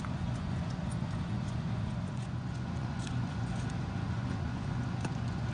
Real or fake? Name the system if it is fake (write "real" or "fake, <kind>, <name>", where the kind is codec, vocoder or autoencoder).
fake, vocoder, Vocos